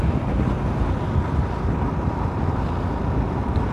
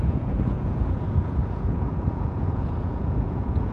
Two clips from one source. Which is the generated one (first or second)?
second